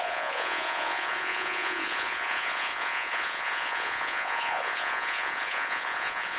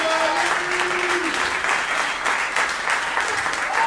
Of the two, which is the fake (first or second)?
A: first